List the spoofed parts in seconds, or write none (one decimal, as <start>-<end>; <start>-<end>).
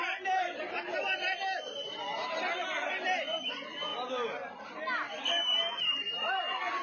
none